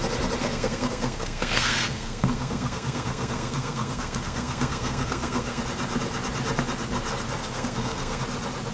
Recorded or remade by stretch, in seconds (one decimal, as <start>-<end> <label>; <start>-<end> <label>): 0.0-0.4 recorded; 0.4-5.6 remade; 5.6-7.4 recorded; 7.4-8.2 remade; 8.2-8.7 recorded